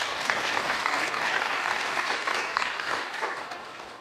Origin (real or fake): fake